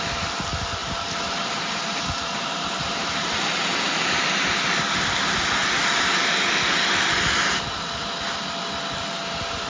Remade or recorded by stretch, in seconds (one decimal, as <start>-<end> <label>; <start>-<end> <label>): 0.0-0.8 recorded; 0.8-3.8 remade; 3.8-9.7 recorded